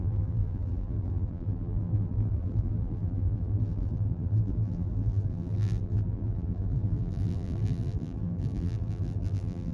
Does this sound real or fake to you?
fake